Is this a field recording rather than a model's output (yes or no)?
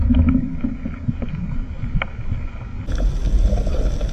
yes